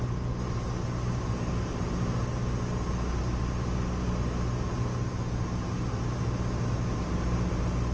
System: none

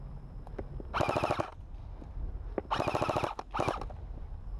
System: none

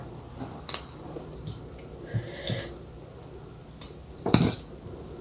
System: none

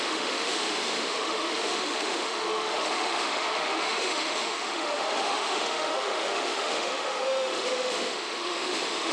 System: autoencoder, DAC-VAE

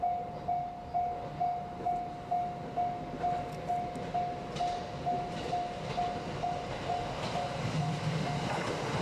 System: none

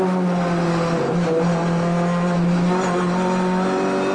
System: none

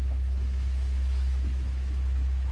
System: autoencoder, DAC-VAE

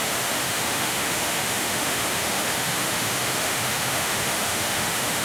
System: autoencoder, DAC-VAE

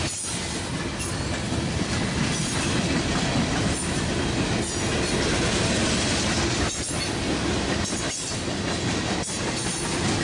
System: none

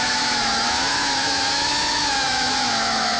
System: autoencoder, DAC-VAE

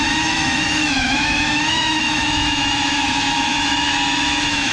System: autoencoder, DAC-VAE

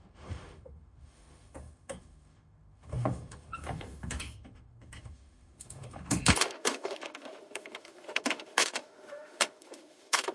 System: autoencoder, DAC-VAE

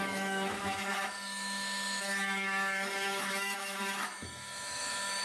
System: autoencoder, DAC-VAE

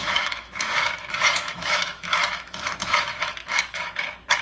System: autoencoder, DAC-VAE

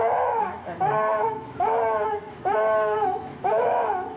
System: autoencoder, DAC-VAE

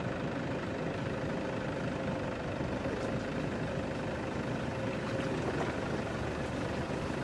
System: none